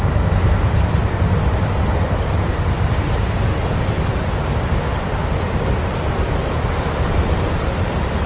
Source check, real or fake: real